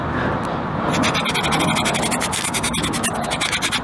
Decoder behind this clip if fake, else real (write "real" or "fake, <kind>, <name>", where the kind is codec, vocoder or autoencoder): real